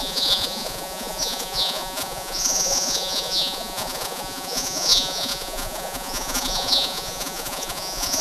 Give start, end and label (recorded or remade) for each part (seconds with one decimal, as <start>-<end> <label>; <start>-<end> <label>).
0.0-8.2 remade